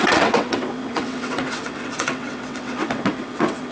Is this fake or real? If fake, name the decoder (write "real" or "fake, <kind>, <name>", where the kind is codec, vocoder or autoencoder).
fake, vocoder, WaveNeXt